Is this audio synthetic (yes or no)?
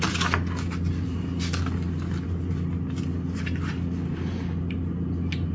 no